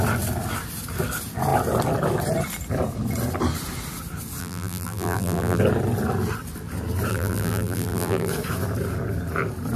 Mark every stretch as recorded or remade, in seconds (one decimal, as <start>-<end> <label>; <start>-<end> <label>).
0.0-4.4 recorded; 4.4-5.6 remade; 5.6-7.1 recorded; 7.1-8.3 remade; 8.3-9.8 recorded